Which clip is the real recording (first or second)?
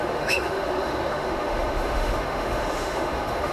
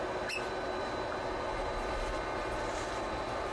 second